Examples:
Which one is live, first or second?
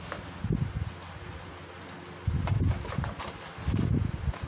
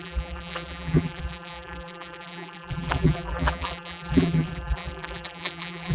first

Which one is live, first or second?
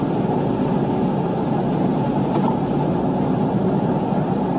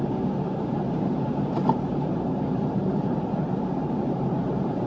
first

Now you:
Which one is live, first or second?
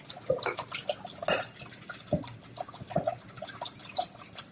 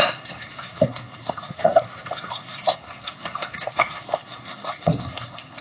first